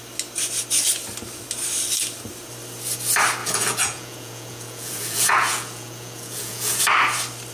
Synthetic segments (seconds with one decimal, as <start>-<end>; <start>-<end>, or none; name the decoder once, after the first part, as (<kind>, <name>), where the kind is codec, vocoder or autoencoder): 3.4-6.8 (vocoder, Vocos)